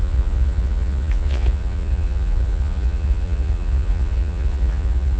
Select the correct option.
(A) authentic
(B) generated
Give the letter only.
B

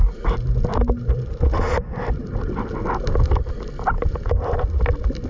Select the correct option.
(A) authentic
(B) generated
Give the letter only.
A